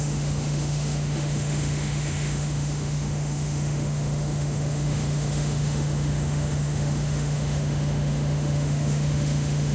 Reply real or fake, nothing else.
fake